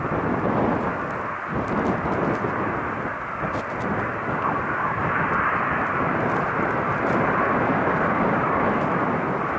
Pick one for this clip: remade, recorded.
recorded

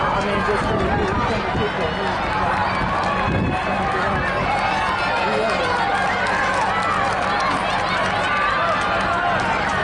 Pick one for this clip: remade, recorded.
recorded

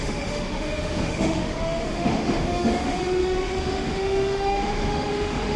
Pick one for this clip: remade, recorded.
remade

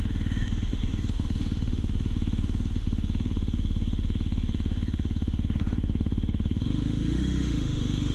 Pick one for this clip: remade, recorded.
remade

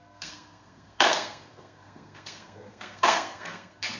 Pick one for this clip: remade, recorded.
remade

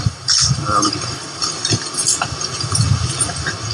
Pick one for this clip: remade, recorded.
recorded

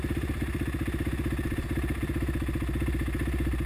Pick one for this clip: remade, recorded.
recorded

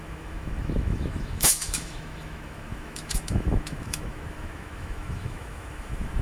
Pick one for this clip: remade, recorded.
remade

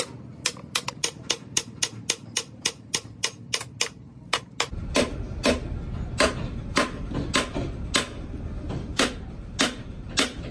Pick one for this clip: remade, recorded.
recorded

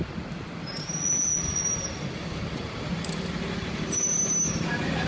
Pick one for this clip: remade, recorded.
recorded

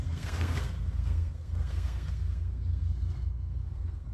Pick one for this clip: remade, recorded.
remade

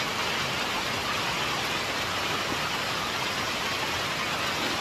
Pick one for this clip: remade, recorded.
recorded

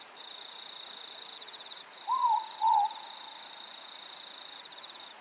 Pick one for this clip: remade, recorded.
remade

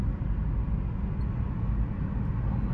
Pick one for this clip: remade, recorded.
recorded